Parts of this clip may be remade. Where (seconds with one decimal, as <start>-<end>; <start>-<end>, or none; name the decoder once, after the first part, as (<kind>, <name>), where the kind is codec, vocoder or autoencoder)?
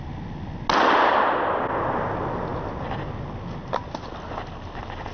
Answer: none